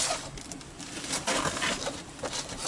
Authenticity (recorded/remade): remade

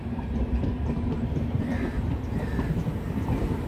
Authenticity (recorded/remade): remade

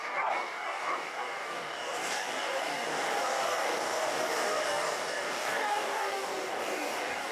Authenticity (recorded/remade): remade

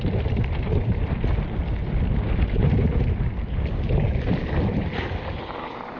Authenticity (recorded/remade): recorded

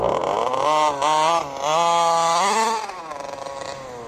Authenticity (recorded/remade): recorded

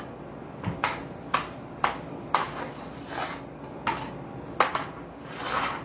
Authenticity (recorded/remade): recorded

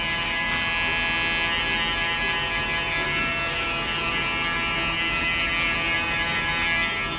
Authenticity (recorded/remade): recorded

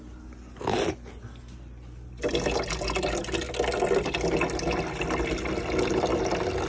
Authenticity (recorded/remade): recorded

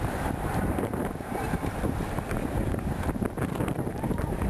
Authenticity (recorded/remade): remade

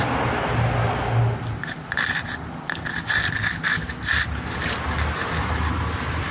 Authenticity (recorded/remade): recorded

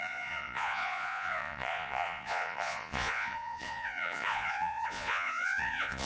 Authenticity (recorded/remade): remade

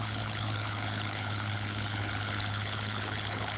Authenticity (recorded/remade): remade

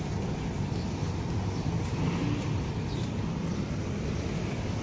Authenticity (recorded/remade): recorded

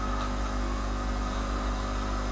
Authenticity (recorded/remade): recorded